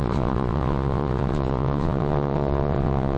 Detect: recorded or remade remade